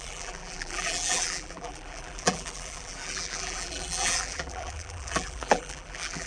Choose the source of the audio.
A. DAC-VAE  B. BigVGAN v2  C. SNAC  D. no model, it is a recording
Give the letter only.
B